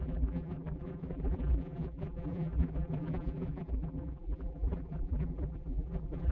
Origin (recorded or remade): remade